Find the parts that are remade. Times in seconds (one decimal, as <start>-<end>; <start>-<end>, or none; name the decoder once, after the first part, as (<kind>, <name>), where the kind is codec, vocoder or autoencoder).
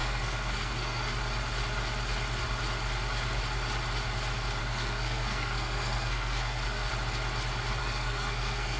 0.0-1.1 (codec, SNAC); 4.6-6.9; 7.8-8.8